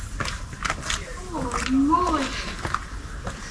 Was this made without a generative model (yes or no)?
yes